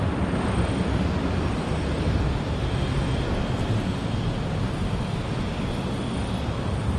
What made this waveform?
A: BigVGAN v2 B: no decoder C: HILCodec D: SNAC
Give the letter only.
B